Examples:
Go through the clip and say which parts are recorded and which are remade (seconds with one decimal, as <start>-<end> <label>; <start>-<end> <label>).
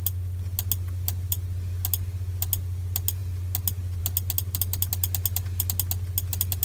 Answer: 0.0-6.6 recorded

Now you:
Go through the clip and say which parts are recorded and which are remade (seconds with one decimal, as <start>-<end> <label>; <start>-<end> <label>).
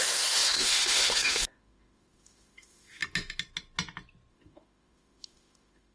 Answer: 0.0-3.0 remade; 3.0-4.3 recorded; 4.3-5.9 remade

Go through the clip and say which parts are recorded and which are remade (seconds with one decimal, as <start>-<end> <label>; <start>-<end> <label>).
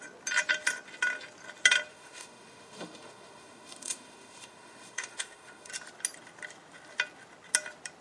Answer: 0.0-1.9 recorded; 1.9-5.7 remade; 5.7-8.0 recorded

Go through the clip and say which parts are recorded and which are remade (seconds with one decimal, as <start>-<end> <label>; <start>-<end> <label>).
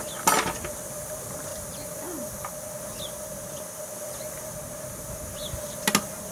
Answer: 0.0-6.3 recorded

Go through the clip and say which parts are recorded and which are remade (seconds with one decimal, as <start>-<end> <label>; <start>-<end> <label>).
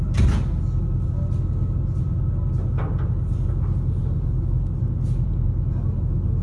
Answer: 0.0-6.4 recorded